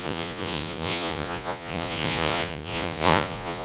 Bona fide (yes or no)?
no